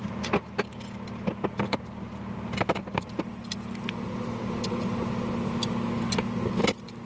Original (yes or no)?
yes